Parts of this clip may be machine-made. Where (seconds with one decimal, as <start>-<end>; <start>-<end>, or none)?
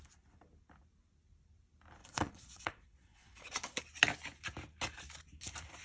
2.0-3.8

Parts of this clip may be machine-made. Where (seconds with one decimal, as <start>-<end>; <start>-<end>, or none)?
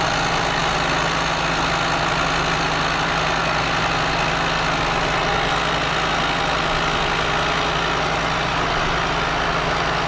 none